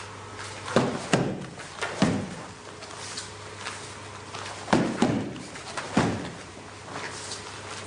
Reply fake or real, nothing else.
real